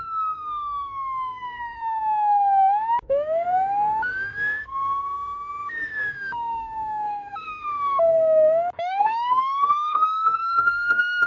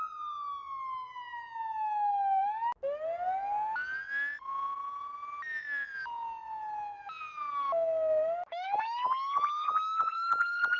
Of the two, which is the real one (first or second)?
second